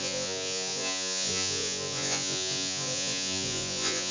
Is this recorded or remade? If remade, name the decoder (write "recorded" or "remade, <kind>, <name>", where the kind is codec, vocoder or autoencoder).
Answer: remade, vocoder, Vocos